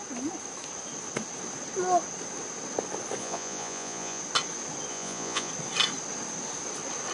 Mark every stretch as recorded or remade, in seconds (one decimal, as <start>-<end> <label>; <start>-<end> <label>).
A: 0.0-3.2 recorded; 3.2-4.2 remade; 4.2-4.9 recorded; 4.9-5.5 remade; 5.5-7.1 recorded